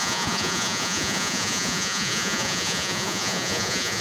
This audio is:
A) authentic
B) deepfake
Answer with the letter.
B